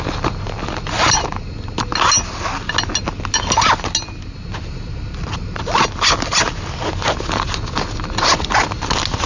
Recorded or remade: recorded